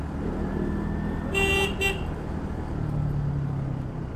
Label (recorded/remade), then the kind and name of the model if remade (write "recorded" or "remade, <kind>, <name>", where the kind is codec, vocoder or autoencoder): recorded